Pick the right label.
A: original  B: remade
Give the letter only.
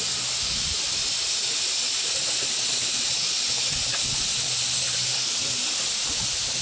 A